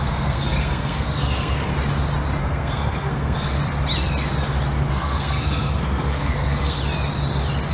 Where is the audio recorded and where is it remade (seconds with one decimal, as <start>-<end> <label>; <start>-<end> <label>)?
0.0-1.7 remade; 1.7-2.4 recorded; 2.4-3.6 remade; 3.6-4.9 recorded; 4.9-6.8 remade; 6.8-7.7 recorded